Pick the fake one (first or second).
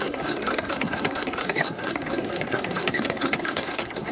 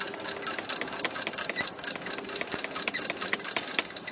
first